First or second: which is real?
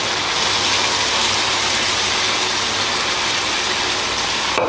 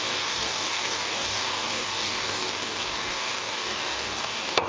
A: first